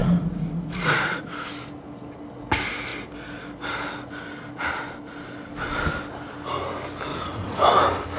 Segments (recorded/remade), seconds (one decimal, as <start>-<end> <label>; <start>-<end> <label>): 0.0-1.3 remade; 1.3-7.1 recorded; 7.1-7.7 remade; 7.7-8.2 recorded